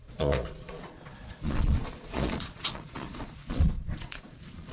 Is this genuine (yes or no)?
no